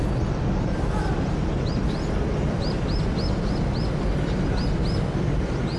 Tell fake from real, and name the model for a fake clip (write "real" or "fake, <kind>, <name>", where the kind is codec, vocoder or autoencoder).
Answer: real